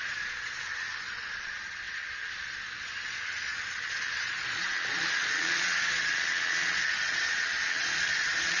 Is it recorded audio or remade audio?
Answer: remade